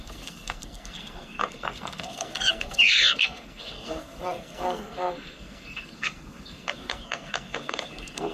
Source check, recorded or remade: remade